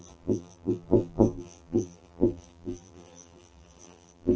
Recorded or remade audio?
remade